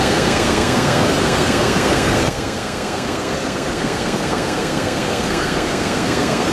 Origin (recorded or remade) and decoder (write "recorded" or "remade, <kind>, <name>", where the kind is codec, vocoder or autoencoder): remade, codec, SNAC